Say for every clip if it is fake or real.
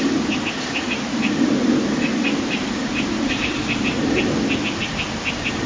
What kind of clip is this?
real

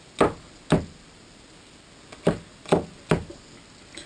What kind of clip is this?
real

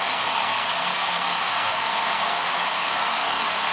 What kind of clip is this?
fake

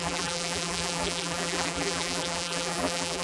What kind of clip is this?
fake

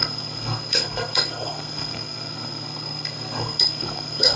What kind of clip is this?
fake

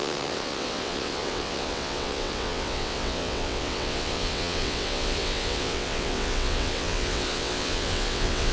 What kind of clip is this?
fake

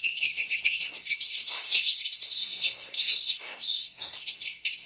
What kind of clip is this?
fake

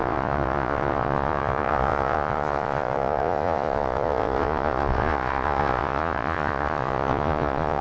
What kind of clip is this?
fake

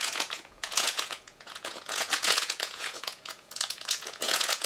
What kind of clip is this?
fake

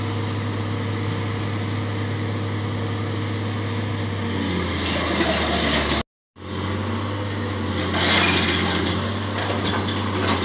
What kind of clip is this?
real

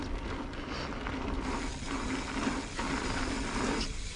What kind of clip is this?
real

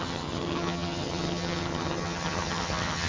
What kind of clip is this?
fake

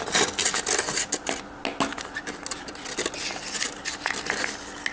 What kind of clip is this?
real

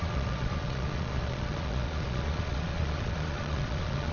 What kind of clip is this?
fake